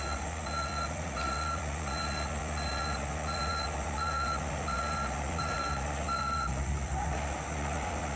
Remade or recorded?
remade